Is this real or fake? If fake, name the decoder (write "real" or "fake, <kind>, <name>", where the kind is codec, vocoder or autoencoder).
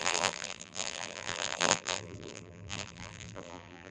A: fake, vocoder, BigVGAN v2